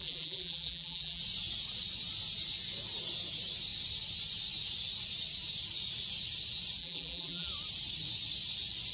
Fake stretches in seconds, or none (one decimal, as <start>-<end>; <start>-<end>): 0.0-1.2; 6.8-7.5

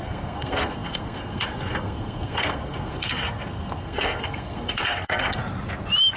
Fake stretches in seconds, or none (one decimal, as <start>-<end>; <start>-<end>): 0.0-5.4

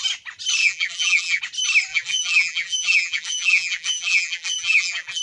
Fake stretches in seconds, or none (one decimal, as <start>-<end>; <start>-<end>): 0.6-1.4; 1.9-5.2